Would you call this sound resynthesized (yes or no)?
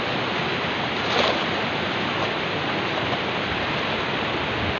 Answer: no